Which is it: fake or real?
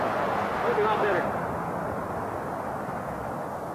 real